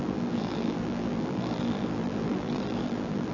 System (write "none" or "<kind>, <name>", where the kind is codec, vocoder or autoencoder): vocoder, BigVGAN v2